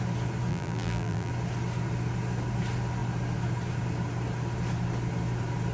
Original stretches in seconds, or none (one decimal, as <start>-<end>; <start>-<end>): 0.0-0.5; 1.3-5.7